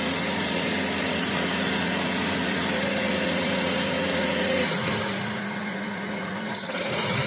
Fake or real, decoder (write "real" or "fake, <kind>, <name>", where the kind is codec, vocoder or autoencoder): fake, vocoder, Vocos